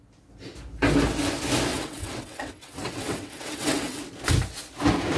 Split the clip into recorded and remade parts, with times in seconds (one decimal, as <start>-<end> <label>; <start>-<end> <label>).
0.0-1.7 recorded; 1.7-4.0 remade; 4.0-5.2 recorded